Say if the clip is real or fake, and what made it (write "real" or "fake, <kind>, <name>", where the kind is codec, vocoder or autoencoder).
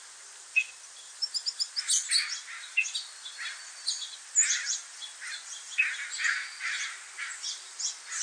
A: real